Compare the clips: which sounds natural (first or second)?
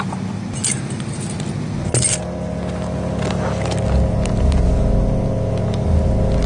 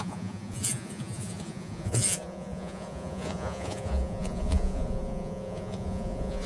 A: first